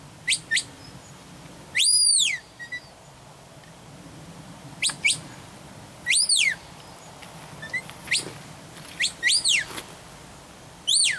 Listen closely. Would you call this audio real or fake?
real